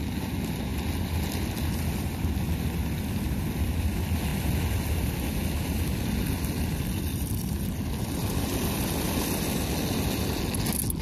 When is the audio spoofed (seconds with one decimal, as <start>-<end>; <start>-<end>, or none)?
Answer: none